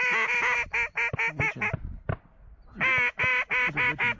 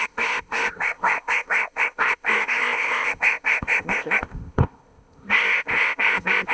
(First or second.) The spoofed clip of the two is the second